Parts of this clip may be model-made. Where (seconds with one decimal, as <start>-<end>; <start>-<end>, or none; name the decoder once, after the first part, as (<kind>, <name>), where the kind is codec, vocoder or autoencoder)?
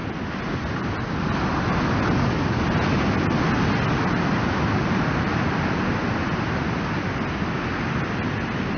none